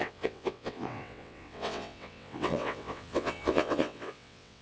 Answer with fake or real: fake